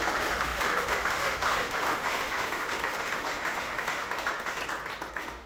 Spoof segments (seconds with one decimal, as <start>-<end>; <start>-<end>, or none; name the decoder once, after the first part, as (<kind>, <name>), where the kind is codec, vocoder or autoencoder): 0.0-4.6 (autoencoder, DAC-VAE); 5.1-5.5